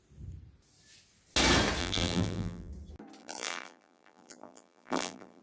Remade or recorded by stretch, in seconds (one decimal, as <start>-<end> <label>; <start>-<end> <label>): 0.0-1.8 recorded; 1.8-2.7 remade; 2.7-3.2 recorded; 3.2-5.4 remade